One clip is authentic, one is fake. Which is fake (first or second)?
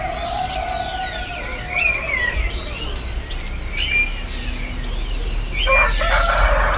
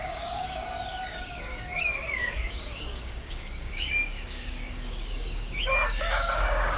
second